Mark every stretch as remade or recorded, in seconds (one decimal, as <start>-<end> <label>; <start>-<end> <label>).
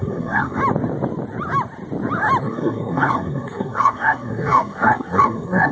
0.0-0.6 remade; 0.6-2.4 recorded; 2.4-5.7 remade